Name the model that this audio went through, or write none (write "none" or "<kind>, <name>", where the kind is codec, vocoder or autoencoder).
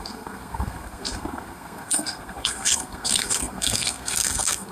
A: codec, SNAC